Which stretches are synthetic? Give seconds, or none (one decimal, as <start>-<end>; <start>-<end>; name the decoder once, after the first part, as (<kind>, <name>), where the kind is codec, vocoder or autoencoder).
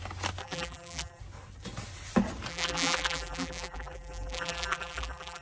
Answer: 0.4-1.2 (vocoder, BigVGAN v2); 2.5-5.4